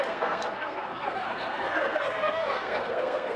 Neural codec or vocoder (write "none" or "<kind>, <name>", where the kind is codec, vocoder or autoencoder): codec, SNAC